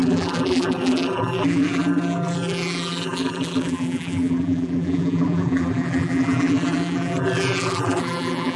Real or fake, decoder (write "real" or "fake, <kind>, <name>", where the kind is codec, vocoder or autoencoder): fake, vocoder, BigVGAN v2